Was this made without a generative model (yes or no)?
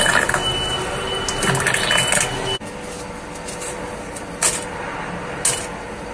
yes